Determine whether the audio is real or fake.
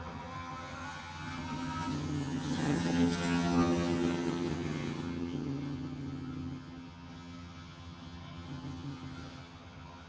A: fake